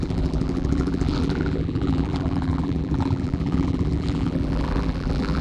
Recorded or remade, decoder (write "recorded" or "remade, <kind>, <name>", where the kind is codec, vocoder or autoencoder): remade, vocoder, BigVGAN v2